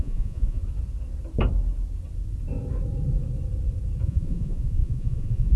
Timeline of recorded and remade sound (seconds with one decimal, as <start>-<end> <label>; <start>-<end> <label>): 0.0-0.6 remade; 0.6-4.0 recorded; 4.0-5.6 remade